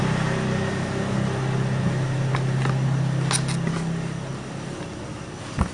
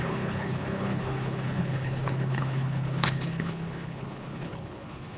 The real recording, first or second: first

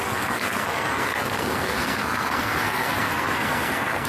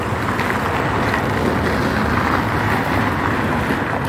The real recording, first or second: second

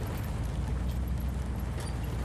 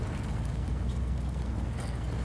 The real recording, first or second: first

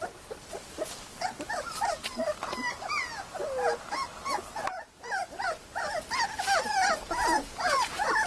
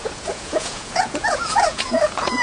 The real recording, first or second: first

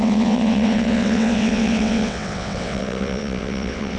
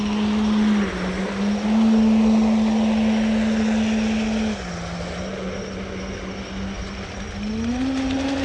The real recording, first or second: second